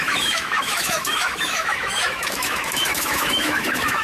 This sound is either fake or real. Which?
fake